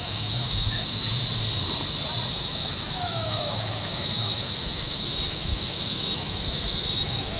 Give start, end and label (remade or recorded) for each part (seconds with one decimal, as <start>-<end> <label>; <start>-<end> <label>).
0.0-1.2 remade; 1.2-2.3 recorded; 2.3-7.4 remade